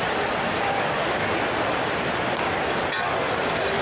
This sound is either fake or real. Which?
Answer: fake